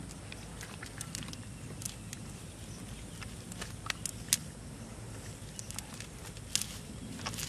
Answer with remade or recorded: recorded